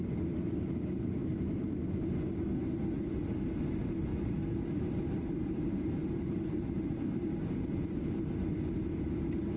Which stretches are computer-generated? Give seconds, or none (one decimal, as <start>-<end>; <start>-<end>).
4.1-8.0